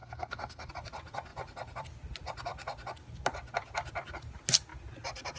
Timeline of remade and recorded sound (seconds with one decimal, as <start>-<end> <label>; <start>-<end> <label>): 0.0-0.7 remade; 0.7-5.4 recorded